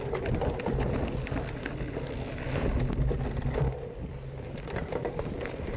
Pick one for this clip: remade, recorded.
recorded